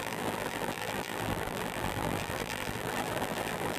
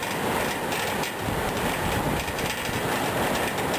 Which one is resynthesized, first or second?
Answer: first